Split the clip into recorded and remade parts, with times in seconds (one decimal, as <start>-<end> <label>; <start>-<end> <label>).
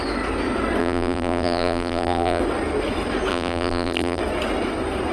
0.0-0.8 recorded; 0.8-2.4 remade; 2.4-3.3 recorded; 3.3-4.2 remade; 4.2-5.1 recorded